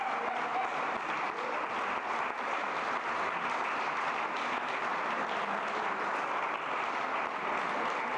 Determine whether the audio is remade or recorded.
remade